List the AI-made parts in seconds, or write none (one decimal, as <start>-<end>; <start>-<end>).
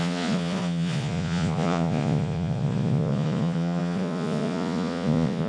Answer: 0.0-5.5